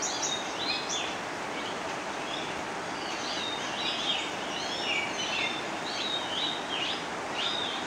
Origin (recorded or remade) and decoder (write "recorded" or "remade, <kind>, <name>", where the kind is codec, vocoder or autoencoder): recorded